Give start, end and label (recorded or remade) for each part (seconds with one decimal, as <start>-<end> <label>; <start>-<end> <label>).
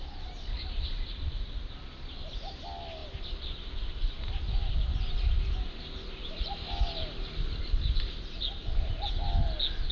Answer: 0.0-9.9 recorded